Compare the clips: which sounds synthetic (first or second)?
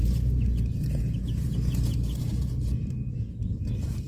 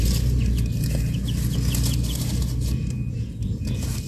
first